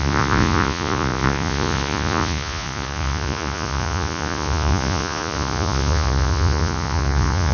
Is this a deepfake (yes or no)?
yes